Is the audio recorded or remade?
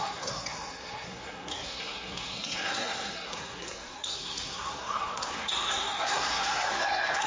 remade